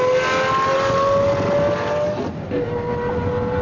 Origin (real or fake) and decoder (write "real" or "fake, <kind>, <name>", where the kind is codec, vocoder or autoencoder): real